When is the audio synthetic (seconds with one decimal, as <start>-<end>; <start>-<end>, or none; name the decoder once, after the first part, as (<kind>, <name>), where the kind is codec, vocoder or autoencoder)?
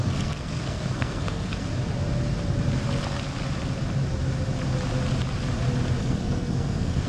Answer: 0.0-1.7 (codec, SNAC); 6.0-7.1